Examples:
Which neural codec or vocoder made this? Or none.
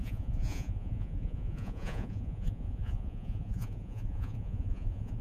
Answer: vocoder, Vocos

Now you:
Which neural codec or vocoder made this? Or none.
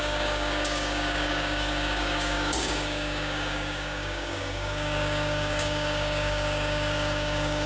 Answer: codec, DAC